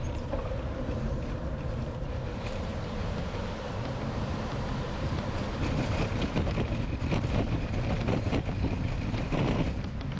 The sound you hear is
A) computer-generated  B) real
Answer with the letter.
A